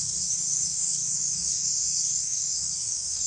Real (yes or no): no